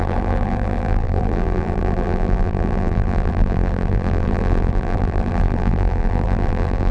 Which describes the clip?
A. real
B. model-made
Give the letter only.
B